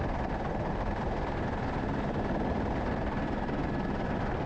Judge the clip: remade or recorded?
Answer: recorded